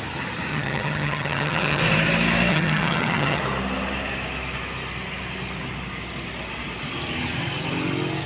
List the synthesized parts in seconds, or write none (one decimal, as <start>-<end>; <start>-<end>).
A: 0.5-1.8; 2.5-3.4